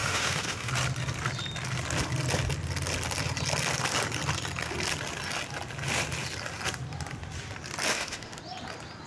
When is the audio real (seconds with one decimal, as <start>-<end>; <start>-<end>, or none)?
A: 0.7-7.9; 8.4-9.1